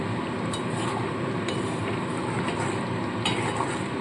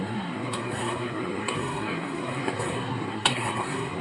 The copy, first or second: second